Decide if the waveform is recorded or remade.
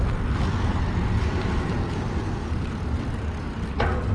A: recorded